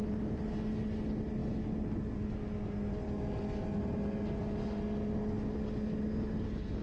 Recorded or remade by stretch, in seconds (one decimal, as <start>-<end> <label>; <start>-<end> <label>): 0.0-6.8 recorded